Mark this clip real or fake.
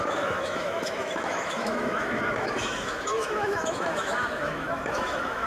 fake